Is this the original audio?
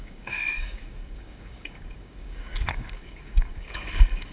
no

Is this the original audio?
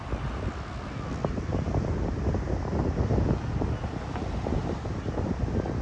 yes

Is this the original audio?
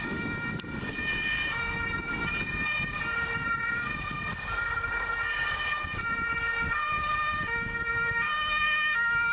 no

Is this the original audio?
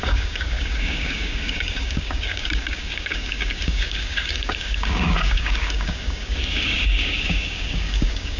no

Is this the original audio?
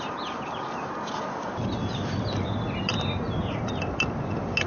yes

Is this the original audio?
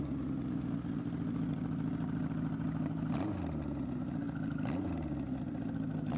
yes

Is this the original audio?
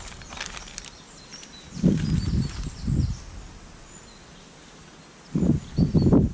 yes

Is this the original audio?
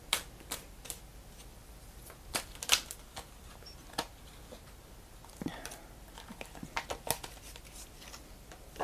yes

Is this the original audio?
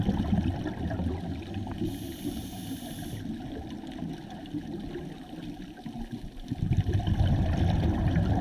yes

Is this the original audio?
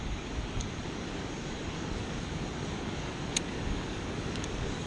no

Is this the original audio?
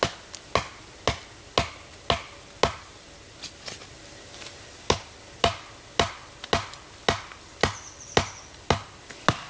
yes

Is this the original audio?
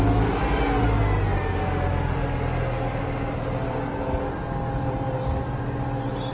yes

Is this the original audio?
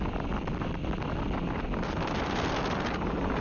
yes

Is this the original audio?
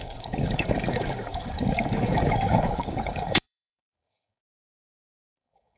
no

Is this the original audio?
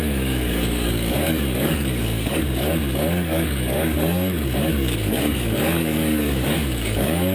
no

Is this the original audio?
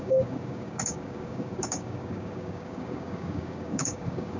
no